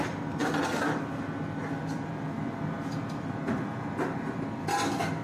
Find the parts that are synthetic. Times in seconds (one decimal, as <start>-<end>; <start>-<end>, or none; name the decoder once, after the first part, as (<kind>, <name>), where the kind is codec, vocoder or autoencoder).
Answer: none